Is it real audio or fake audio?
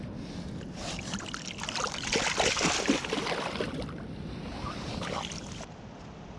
real